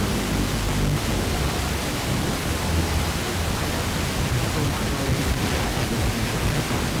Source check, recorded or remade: recorded